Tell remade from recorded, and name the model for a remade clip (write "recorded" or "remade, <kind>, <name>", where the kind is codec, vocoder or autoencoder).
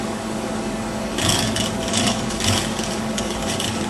remade, codec, DAC